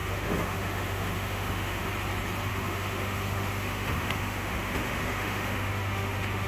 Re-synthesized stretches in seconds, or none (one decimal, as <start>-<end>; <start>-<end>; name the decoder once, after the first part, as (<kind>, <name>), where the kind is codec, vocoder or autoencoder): 0.0-1.9 (autoencoder, DAC-VAE); 2.5-6.5